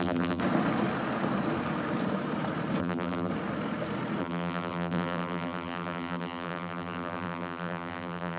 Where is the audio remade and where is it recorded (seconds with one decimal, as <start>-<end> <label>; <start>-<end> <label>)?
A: 0.0-0.4 remade; 0.4-2.8 recorded; 2.8-3.3 remade; 3.3-4.2 recorded; 4.2-8.4 remade

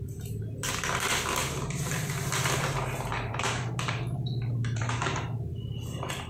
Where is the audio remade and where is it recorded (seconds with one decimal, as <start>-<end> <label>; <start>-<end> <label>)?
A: 0.0-1.4 recorded; 1.4-5.2 remade; 5.2-6.3 recorded

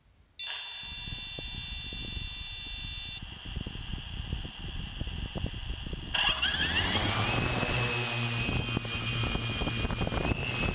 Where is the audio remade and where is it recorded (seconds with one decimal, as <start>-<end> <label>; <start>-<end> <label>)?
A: 0.0-10.7 recorded

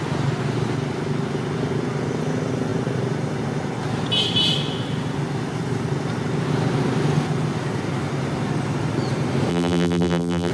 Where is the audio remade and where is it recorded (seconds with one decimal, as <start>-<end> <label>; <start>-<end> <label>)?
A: 0.0-9.5 recorded; 9.5-10.5 remade

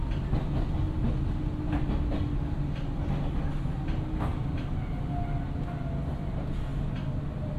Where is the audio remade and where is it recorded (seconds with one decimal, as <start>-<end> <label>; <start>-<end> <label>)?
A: 0.0-6.7 recorded; 6.7-7.6 remade

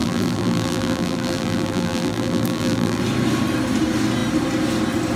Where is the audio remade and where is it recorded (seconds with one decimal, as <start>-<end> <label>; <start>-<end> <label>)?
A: 0.0-3.0 remade; 3.0-5.2 recorded